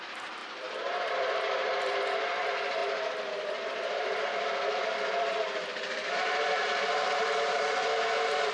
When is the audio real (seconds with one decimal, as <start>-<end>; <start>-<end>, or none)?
0.0-0.4; 2.0-2.8; 7.9-8.5

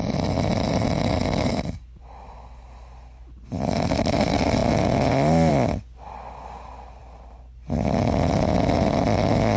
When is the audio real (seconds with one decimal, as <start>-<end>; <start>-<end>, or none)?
0.0-9.6

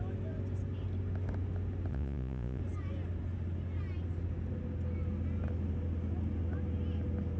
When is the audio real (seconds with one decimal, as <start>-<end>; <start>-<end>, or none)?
0.0-1.9; 2.6-7.4

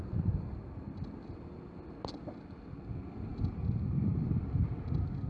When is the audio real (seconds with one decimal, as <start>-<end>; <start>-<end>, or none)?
0.0-5.3

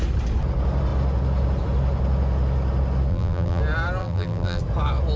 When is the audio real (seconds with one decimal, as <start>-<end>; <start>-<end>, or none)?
0.0-3.1; 3.6-4.0; 4.6-5.2

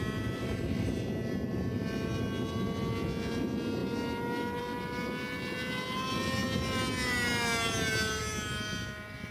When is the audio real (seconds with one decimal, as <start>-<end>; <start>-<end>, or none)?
0.0-9.3

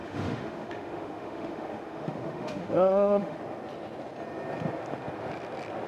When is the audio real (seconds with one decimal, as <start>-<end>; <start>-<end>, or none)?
3.4-5.9

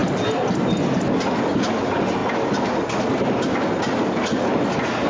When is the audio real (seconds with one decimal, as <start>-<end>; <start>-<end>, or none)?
0.0-5.1